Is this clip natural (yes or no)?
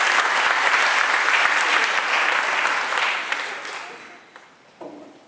yes